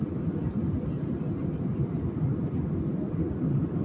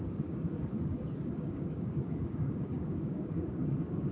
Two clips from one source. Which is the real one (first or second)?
first